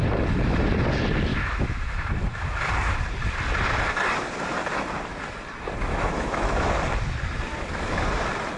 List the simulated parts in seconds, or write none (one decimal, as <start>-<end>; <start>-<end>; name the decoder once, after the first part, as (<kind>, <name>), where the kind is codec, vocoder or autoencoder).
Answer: 1.3-2.1 (autoencoder, DAC-VAE); 5.9-6.7